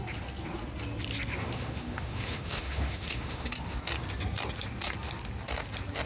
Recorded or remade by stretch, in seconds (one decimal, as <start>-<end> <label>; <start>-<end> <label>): 0.0-1.4 recorded; 1.4-3.5 remade; 3.5-6.1 recorded